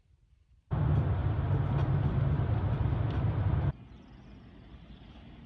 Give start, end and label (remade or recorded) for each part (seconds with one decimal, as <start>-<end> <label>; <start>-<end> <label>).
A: 0.0-5.5 recorded